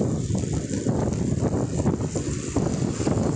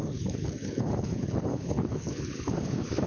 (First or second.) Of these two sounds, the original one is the first